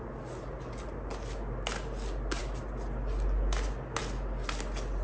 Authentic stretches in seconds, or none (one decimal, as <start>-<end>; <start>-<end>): 0.0-5.0